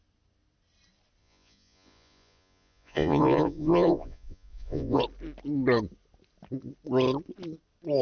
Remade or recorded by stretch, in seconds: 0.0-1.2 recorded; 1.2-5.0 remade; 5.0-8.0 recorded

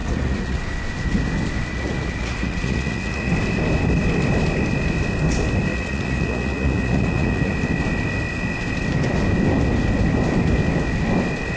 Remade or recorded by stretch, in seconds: 0.0-0.6 remade; 0.6-1.7 recorded; 1.7-3.3 remade; 3.3-5.7 recorded; 5.7-7.5 remade; 7.5-11.6 recorded

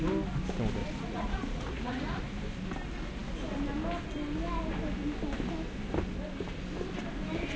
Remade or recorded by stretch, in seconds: 0.0-0.8 recorded; 0.8-2.2 remade; 2.2-7.6 recorded

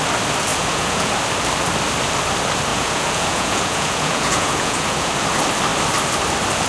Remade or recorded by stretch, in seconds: 0.0-0.5 recorded; 0.5-1.1 remade; 1.1-2.7 recorded; 2.7-5.1 remade; 5.1-6.7 recorded